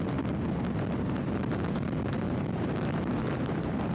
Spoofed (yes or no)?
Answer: yes